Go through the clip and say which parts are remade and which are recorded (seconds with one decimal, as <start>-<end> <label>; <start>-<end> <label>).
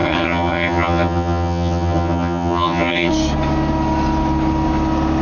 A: 0.0-3.1 remade; 3.1-5.2 recorded